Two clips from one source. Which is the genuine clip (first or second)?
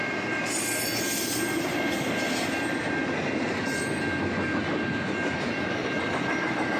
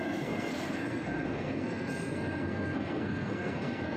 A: first